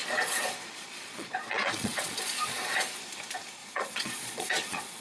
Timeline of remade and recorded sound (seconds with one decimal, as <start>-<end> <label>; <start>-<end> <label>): 0.0-3.0 remade; 3.0-3.6 recorded; 3.6-5.0 remade